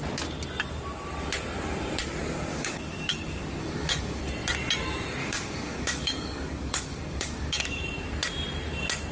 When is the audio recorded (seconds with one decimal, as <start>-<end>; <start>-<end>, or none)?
0.0-2.5; 4.2-5.2; 7.8-9.1